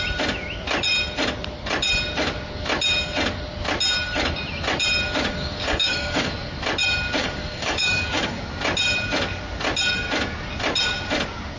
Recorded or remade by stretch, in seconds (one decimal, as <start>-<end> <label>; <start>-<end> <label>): 0.0-5.3 recorded; 5.3-6.3 remade; 6.3-7.2 recorded; 7.2-8.4 remade; 8.4-11.6 recorded